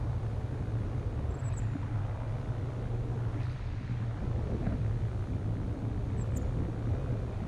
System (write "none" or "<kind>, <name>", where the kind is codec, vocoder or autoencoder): none